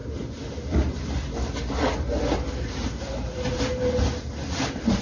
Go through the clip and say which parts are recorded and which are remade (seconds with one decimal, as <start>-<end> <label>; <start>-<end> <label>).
0.0-5.0 recorded

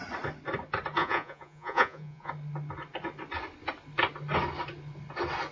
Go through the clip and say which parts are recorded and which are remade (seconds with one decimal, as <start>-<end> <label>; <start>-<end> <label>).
0.0-1.0 recorded; 1.0-2.3 remade; 2.3-5.5 recorded